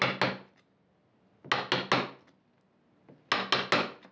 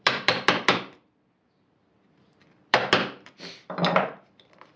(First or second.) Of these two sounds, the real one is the first